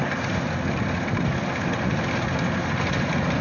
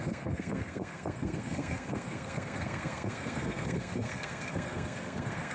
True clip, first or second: first